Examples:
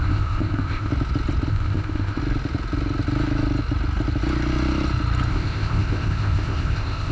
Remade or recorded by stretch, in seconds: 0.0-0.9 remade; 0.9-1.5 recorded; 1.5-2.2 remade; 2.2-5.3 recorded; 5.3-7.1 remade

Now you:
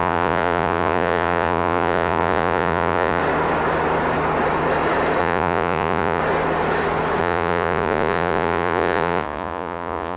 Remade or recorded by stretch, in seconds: 0.0-3.2 remade; 3.2-5.2 recorded; 5.2-6.2 remade; 6.2-7.2 recorded; 7.2-10.2 remade